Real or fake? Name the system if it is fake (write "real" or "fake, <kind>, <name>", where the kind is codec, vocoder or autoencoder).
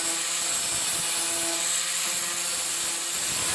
real